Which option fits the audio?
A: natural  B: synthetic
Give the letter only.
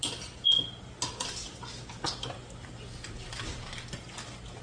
A